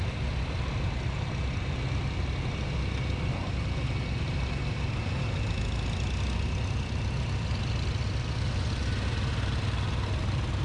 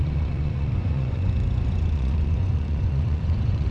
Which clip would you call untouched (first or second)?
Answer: first